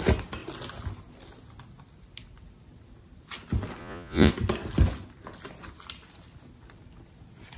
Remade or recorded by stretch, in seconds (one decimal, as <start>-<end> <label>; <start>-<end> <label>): 0.0-3.8 recorded; 3.8-4.3 remade; 4.3-7.6 recorded